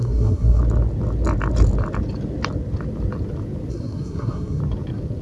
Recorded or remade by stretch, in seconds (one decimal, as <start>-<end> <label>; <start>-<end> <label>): 0.0-0.6 remade; 0.6-3.7 recorded; 3.7-4.6 remade; 4.6-5.2 recorded

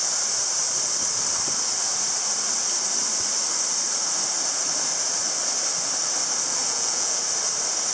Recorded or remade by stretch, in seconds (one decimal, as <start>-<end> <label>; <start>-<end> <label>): 0.0-6.6 recorded; 6.6-7.2 remade; 7.2-7.9 recorded

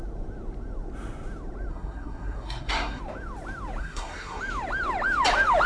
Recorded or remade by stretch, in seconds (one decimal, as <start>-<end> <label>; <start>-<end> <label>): 0.0-1.7 recorded; 1.7-3.0 remade; 3.0-3.8 recorded; 3.8-4.4 remade; 4.4-5.7 recorded

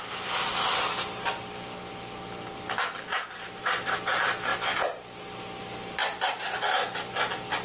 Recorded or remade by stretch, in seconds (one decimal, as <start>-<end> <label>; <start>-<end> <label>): 0.0-7.6 recorded

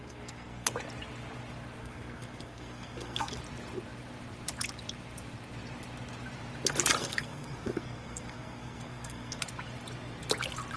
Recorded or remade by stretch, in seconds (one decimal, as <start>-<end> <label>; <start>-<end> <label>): 0.0-0.7 remade; 0.7-1.8 recorded; 1.8-3.4 remade; 3.4-7.0 recorded; 7.0-9.4 remade; 9.4-10.8 recorded

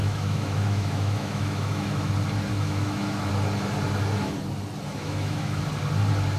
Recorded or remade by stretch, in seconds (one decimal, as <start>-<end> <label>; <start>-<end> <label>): 0.0-2.1 remade; 2.1-2.5 recorded; 2.5-3.3 remade; 3.3-4.9 recorded; 4.9-5.6 remade; 5.6-6.4 recorded

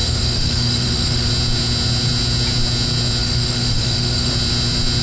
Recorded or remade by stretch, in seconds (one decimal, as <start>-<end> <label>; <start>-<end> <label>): 0.0-1.3 remade; 1.3-3.2 recorded; 3.2-4.3 remade; 4.3-5.0 recorded